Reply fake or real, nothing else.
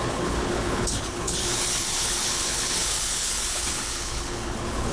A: fake